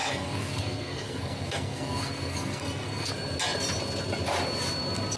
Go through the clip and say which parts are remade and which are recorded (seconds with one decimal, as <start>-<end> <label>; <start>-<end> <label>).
0.0-3.1 remade; 3.1-5.2 recorded